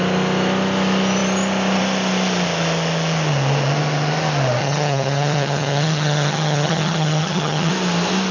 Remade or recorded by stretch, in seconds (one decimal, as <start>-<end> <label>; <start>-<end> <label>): 0.0-4.6 recorded; 4.6-7.7 remade; 7.7-8.3 recorded